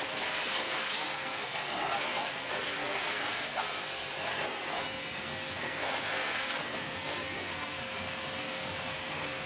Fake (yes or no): yes